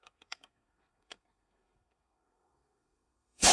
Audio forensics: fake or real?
fake